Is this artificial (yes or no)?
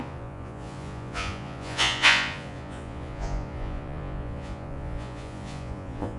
yes